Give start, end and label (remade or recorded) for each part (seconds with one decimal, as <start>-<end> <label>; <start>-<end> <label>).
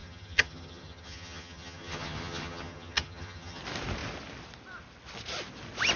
0.0-3.6 remade; 3.6-6.0 recorded